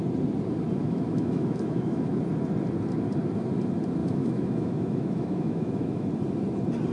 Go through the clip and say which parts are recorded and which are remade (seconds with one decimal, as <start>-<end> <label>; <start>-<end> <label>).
0.0-0.8 recorded; 0.8-2.2 remade; 2.2-4.0 recorded; 4.0-6.1 remade; 6.1-6.9 recorded